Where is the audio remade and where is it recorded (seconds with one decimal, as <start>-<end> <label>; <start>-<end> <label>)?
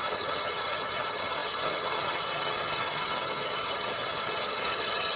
0.0-5.2 remade